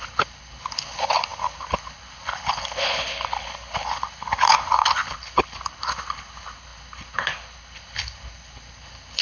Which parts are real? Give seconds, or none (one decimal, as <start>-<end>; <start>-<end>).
none